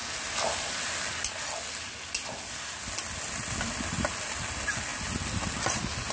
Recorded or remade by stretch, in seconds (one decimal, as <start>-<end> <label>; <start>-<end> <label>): 0.0-6.1 recorded